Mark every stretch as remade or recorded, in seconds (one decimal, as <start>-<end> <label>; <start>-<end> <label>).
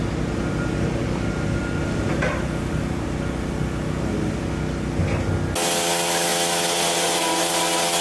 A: 0.0-1.8 recorded; 1.8-2.8 remade; 2.8-8.0 recorded